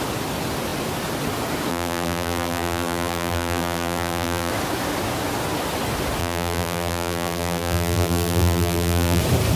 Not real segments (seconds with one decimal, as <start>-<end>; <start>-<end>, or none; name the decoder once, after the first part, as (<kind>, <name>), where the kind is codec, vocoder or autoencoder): 1.7-4.5 (vocoder, BigVGAN v2); 6.2-9.2